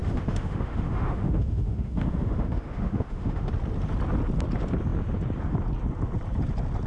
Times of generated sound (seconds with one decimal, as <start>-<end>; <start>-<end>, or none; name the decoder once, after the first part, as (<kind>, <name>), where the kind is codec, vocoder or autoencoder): 0.0-3.5 (autoencoder, DAC-VAE)